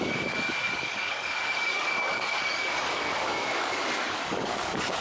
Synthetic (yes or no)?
yes